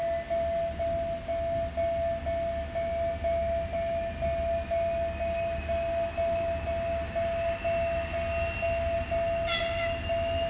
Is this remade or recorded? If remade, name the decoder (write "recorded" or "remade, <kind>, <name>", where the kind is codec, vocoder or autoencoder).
recorded